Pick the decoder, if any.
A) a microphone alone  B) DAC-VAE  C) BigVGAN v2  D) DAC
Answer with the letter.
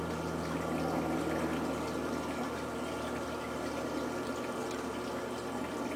A